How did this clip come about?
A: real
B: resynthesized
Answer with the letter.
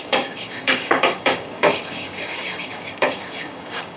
B